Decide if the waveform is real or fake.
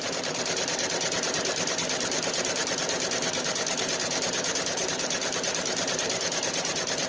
fake